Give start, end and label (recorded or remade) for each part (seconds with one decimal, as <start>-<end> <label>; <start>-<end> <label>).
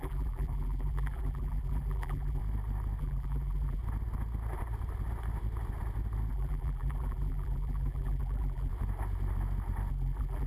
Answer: 0.0-2.4 remade; 2.4-3.0 recorded; 3.0-3.8 remade; 3.8-6.3 recorded; 6.3-8.7 remade; 8.7-9.9 recorded; 9.9-10.5 remade